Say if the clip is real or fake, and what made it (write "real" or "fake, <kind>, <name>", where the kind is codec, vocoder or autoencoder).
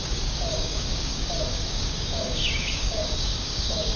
fake, codec, DAC